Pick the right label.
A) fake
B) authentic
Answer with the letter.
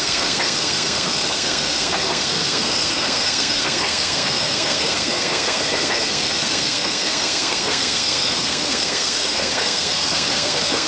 A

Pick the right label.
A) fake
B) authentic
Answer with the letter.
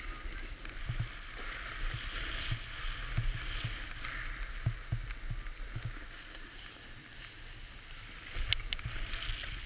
B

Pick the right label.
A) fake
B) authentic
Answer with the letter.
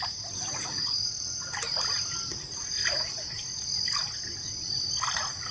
B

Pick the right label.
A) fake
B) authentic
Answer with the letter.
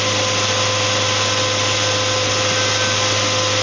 B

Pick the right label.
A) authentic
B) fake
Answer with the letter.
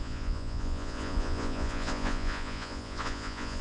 B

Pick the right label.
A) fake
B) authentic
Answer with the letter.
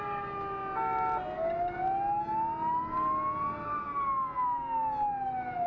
B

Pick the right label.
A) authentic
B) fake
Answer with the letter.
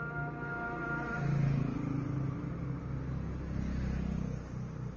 A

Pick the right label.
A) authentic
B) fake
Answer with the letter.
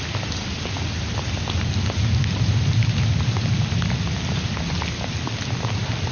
A